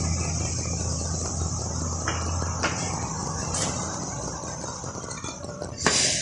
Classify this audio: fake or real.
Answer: real